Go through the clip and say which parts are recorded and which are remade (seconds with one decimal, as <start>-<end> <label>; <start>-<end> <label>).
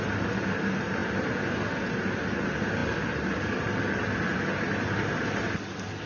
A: 0.0-1.0 remade; 1.0-1.9 recorded; 1.9-6.1 remade